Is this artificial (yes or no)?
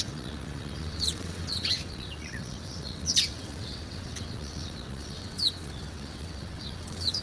yes